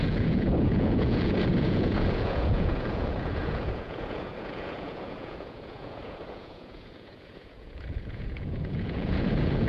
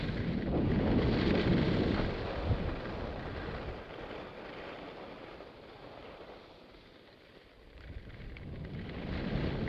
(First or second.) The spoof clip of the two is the first